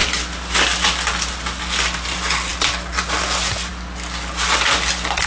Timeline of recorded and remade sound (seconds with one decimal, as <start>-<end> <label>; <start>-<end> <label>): 0.0-5.3 recorded